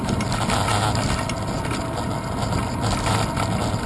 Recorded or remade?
recorded